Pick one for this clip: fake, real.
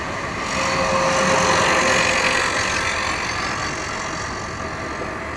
real